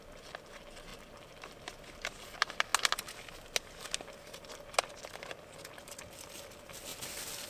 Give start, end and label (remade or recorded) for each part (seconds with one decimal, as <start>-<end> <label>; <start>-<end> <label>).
0.0-7.5 recorded